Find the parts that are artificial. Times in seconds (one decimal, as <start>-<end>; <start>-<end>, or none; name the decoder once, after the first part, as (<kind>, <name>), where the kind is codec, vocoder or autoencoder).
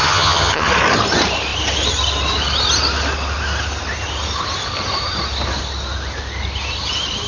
0.0-0.7 (vocoder, HiFi-GAN)